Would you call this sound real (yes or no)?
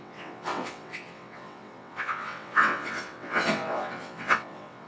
no